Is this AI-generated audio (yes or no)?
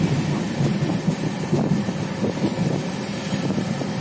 yes